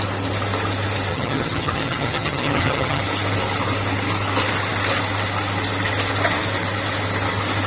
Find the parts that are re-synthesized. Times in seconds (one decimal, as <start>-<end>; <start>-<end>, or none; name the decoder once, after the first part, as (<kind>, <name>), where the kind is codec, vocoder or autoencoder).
1.1-3.0 (vocoder, HiFi-GAN)